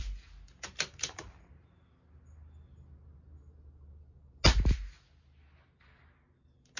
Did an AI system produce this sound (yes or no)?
no